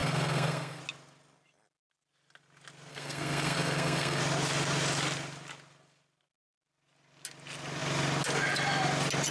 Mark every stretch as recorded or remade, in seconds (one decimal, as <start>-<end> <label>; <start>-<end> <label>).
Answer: 0.0-0.8 remade; 0.8-2.9 recorded; 2.9-4.2 remade; 4.2-9.3 recorded